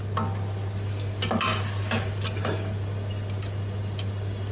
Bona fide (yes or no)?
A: yes